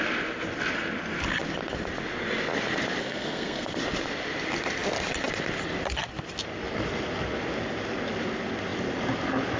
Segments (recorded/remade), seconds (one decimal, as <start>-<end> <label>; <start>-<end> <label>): 0.0-3.0 recorded; 3.0-3.8 remade; 3.8-9.6 recorded